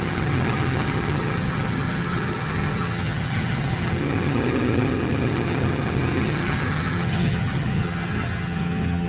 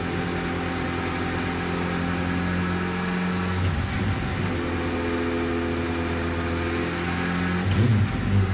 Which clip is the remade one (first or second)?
first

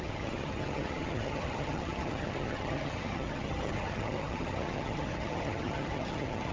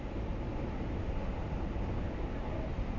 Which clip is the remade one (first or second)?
first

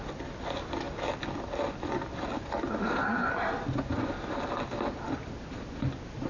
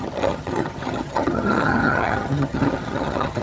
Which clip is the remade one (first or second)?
second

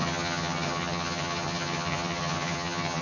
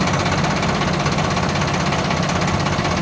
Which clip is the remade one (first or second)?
first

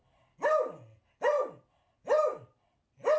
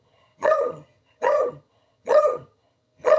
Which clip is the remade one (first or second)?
second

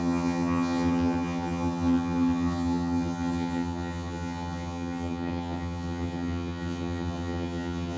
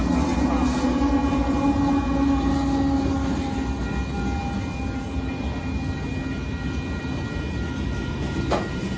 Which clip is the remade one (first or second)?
first